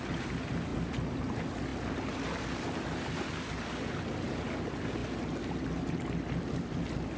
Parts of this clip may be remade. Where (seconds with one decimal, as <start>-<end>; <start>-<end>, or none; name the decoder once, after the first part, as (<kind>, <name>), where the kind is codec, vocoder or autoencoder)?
none